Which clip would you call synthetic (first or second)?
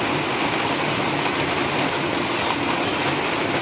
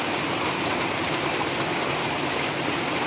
second